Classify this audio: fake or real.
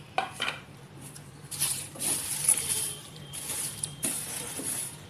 fake